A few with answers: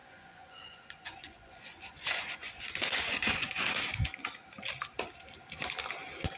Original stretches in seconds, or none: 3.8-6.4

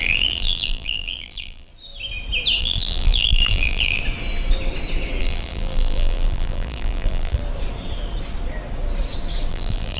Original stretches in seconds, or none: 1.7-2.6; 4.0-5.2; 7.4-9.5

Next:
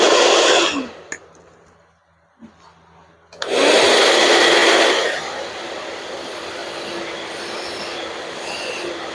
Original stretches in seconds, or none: 0.0-9.1

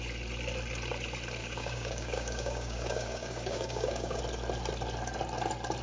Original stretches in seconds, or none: 0.0-1.4; 4.2-5.8